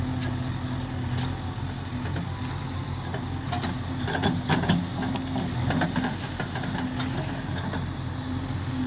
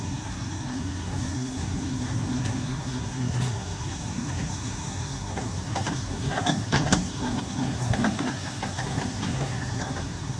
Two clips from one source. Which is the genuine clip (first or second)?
first